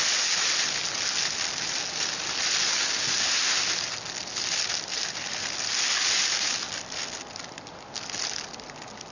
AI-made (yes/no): no